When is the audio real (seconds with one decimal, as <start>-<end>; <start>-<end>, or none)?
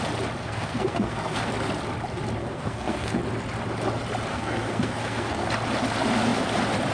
0.0-0.4; 1.5-2.4; 3.2-4.3; 5.5-6.9